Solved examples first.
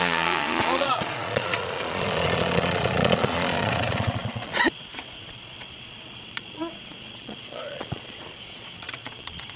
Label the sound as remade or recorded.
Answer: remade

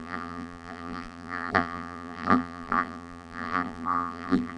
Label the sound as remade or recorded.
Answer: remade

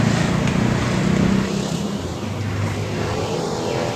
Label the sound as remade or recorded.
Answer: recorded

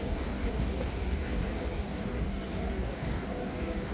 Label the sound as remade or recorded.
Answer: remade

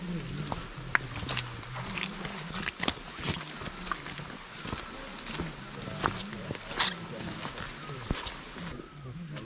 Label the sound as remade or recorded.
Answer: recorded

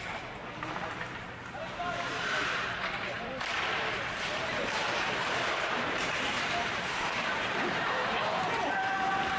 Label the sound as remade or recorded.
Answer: remade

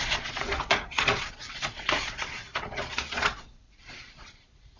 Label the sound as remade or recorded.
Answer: remade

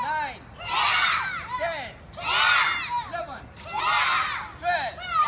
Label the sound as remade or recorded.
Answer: recorded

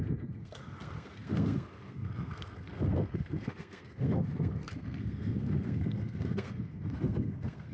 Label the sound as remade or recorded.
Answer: remade